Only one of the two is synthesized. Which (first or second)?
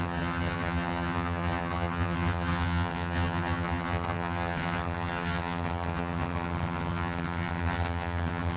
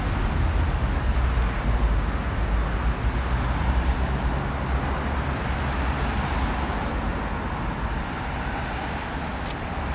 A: first